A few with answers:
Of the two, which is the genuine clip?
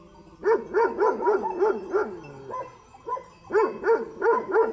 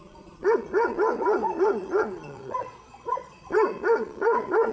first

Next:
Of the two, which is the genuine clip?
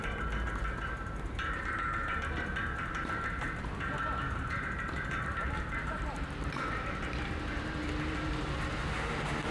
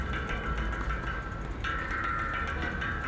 second